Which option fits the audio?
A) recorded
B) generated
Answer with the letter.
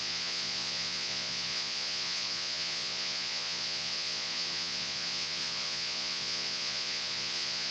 B